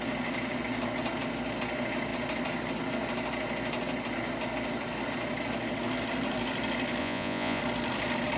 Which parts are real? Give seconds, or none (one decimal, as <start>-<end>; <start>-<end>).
0.0-7.0; 7.6-8.4